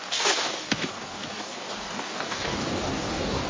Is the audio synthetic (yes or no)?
yes